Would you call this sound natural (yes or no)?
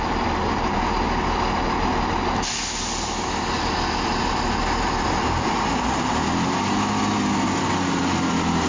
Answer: yes